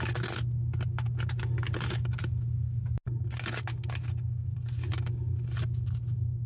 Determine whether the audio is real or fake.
real